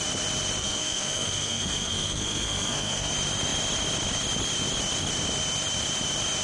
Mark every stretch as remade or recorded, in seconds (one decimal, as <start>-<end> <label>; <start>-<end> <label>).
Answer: 0.0-0.6 recorded; 0.6-3.1 remade; 3.1-6.4 recorded